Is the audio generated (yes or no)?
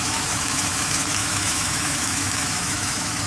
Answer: yes